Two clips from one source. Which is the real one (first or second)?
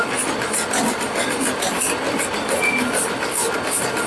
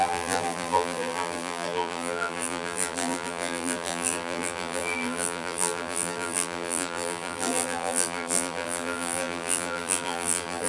first